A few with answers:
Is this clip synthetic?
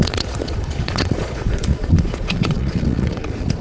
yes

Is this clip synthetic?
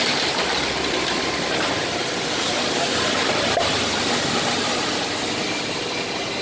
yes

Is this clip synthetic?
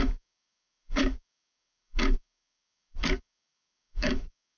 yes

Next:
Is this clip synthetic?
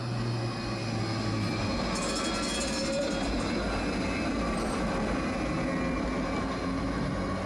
no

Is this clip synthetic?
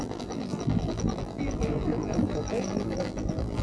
yes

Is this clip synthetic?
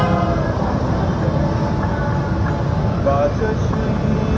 no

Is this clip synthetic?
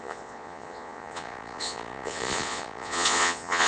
yes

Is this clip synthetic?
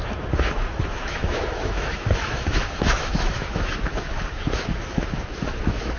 yes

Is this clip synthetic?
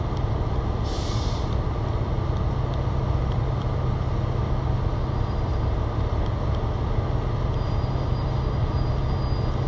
no